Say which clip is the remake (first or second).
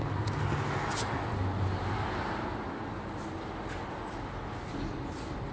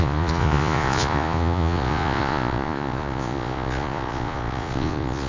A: second